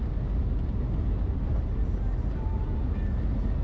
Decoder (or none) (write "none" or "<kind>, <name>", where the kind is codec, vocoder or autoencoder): none